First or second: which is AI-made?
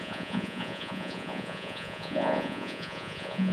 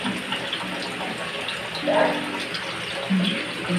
first